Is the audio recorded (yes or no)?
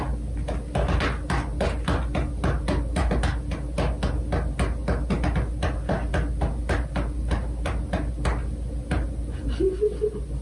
yes